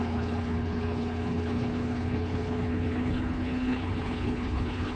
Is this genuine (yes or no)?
no